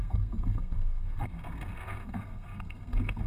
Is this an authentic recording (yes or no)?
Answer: no